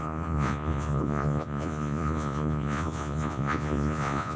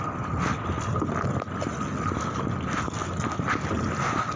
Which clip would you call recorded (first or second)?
second